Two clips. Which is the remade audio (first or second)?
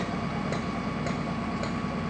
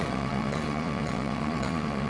second